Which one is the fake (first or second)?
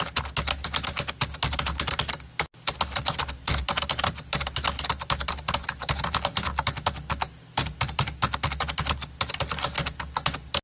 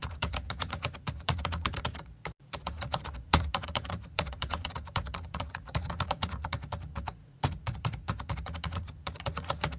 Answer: second